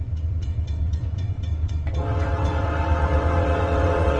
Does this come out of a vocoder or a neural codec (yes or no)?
yes